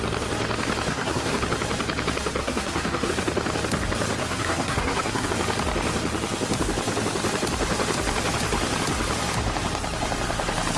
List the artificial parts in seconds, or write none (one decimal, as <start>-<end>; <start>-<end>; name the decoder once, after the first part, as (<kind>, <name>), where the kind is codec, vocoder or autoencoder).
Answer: 0.9-1.4 (codec, SNAC); 2.4-3.1; 4.2-5.3